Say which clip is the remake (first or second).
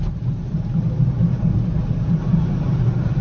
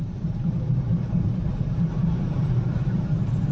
second